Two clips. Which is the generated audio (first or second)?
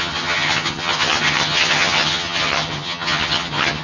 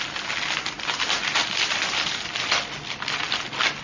first